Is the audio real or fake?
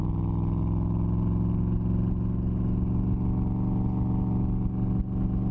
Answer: real